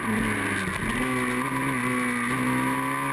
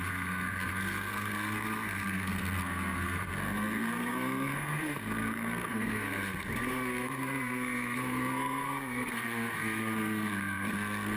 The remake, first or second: second